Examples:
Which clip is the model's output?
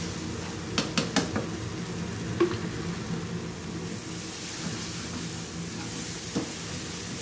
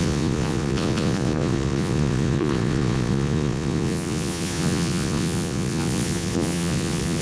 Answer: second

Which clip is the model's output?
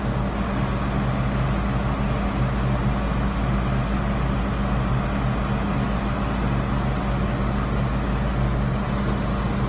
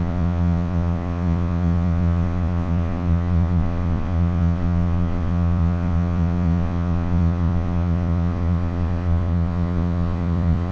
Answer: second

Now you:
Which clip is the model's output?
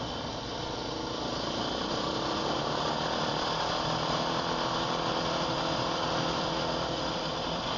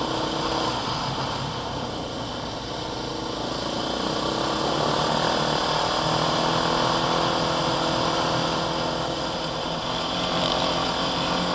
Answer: first